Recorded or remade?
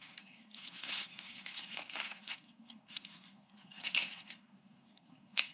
remade